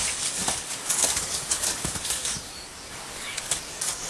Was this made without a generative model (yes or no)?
no